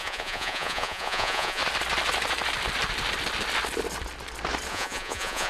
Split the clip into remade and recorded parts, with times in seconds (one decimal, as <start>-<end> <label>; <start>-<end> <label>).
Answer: 0.0-1.6 remade; 1.6-4.7 recorded; 4.7-5.5 remade